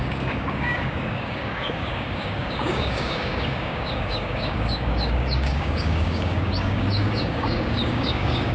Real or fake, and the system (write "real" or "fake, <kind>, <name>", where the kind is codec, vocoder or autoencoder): fake, codec, DAC